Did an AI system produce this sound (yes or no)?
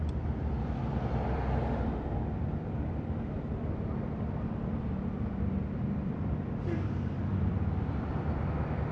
yes